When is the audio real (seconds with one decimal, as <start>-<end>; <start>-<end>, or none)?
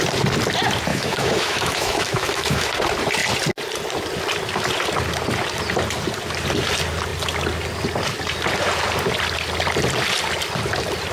0.0-0.9; 2.7-11.1